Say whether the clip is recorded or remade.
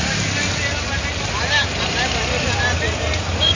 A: recorded